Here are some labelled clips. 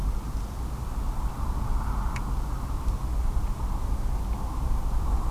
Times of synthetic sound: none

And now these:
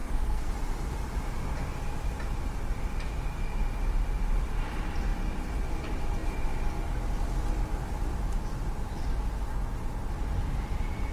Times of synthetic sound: 0.0-0.5 (codec, SNAC)

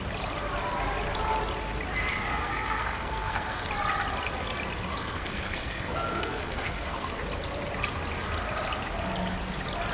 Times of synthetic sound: 2.3-3.7 (codec, SNAC); 4.9-7.2

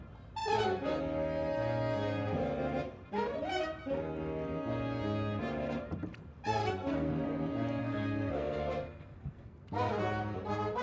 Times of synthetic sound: 6.6-7.1 (codec, SNAC); 7.8-9.9

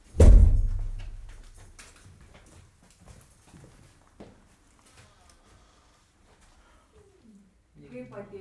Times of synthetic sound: none

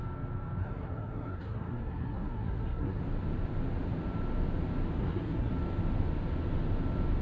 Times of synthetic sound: 0.6-3.0 (codec, SNAC); 5.0-5.5

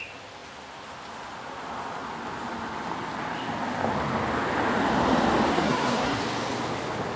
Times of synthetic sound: 5.5-6.2 (codec, SNAC)